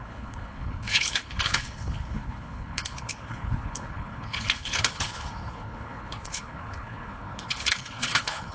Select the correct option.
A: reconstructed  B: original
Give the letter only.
A